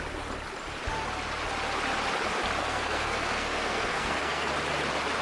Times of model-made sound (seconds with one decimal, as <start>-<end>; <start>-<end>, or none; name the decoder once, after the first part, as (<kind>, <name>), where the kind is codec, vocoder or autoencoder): 2.6-4.5 (codec, SNAC)